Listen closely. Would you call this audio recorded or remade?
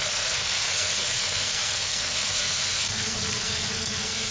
remade